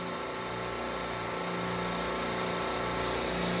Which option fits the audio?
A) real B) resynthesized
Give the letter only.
A